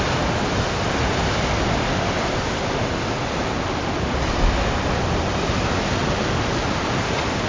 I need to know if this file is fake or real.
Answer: real